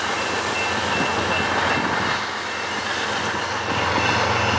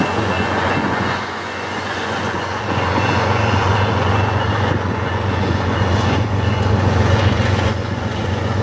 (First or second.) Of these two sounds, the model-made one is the second